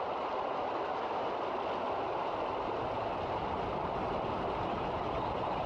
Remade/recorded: recorded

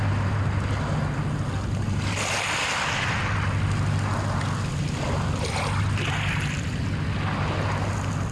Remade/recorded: recorded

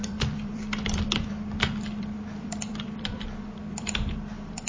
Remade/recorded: remade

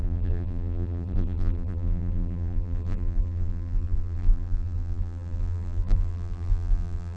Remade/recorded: remade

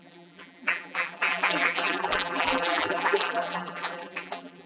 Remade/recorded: remade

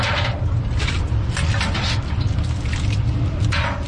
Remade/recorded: recorded